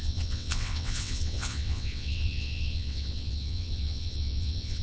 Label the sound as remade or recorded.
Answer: remade